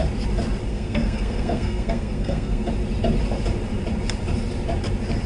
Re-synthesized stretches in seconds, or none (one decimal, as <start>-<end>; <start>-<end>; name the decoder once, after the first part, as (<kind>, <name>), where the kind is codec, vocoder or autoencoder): 0.7-2.7 (codec, SNAC)